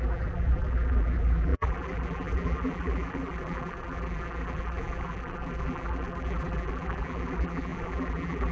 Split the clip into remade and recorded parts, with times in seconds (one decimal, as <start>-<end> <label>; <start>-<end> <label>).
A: 0.0-8.5 remade